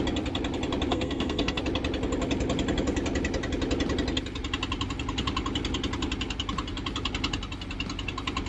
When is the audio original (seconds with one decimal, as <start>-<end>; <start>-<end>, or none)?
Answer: 0.0-0.9; 1.6-8.5